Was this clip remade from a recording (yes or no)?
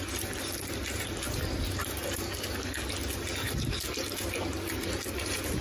no